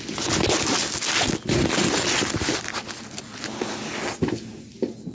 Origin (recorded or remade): recorded